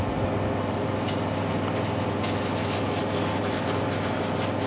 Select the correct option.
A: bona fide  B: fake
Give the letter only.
A